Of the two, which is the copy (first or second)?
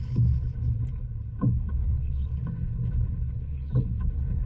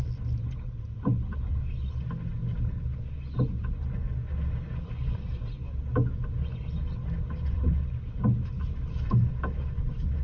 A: first